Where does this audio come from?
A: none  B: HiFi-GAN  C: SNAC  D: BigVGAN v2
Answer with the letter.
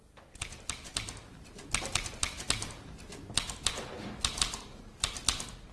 A